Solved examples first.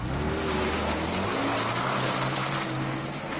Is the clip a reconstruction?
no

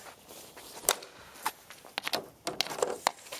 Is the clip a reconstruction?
no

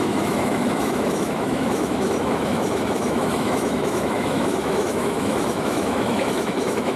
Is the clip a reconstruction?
yes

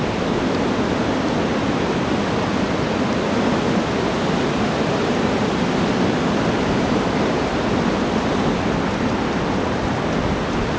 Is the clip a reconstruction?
no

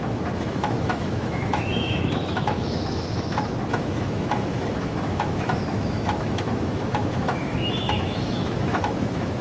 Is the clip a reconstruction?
yes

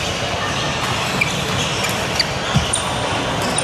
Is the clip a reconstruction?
no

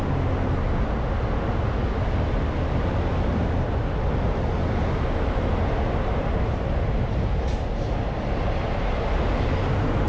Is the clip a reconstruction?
no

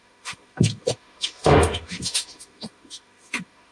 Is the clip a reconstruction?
yes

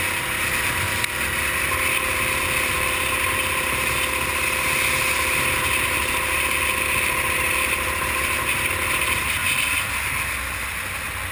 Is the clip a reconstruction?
no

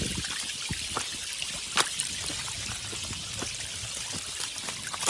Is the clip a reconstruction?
no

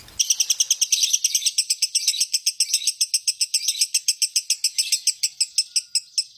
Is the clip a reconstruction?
no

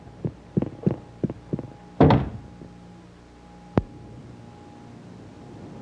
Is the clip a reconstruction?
no